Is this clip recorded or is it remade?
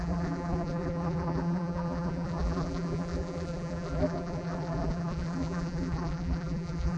remade